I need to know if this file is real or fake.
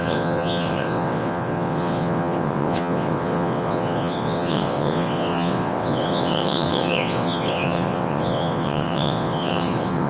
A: fake